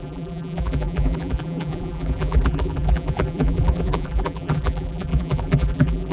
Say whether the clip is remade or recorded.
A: remade